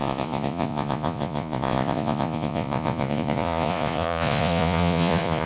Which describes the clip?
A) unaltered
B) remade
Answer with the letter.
B